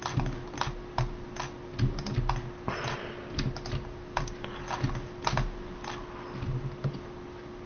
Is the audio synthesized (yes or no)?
no